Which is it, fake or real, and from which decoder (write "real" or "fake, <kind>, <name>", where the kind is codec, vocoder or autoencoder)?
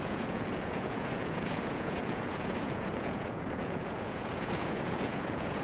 fake, vocoder, Vocos